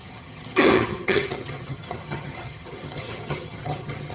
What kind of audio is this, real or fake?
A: fake